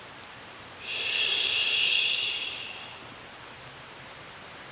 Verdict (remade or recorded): remade